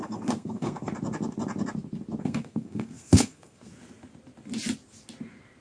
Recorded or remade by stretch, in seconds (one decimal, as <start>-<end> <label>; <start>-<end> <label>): 0.0-0.9 remade; 0.9-2.2 recorded; 2.2-3.7 remade; 3.7-5.6 recorded

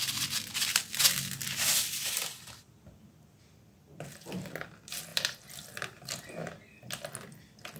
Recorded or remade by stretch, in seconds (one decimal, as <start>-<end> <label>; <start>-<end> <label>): 0.0-5.1 recorded; 5.1-6.3 remade; 6.3-7.8 recorded

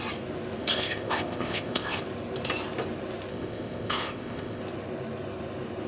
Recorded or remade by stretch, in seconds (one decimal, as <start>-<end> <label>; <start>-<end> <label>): 0.0-0.6 recorded; 0.6-2.0 remade; 2.0-3.3 recorded; 3.3-4.6 remade; 4.6-5.9 recorded